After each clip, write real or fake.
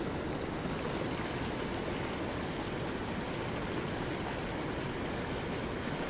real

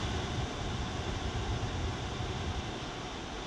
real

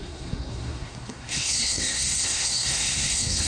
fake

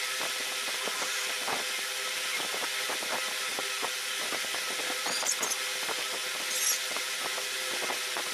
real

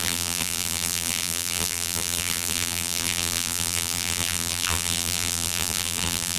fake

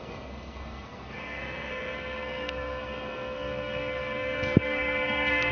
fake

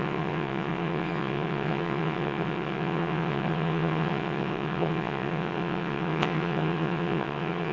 fake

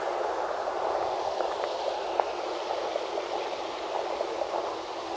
real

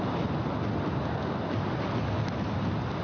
real